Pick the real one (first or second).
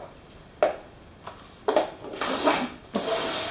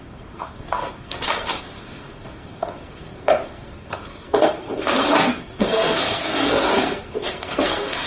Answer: first